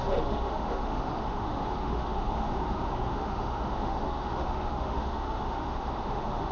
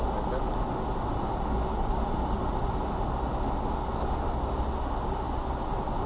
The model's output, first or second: first